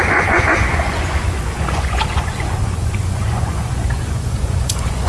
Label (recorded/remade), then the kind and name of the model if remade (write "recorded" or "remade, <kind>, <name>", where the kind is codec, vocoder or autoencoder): remade, vocoder, Vocos